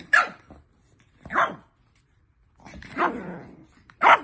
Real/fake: fake